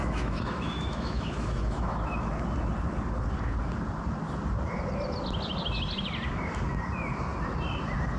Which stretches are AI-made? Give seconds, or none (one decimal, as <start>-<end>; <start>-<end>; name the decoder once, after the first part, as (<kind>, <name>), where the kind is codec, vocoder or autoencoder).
0.0-2.3 (autoencoder, DAC-VAE)